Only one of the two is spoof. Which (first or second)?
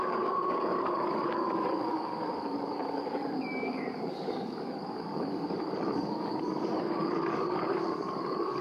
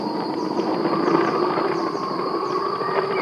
first